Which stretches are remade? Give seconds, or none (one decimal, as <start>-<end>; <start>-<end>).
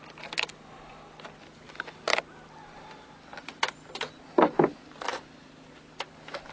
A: none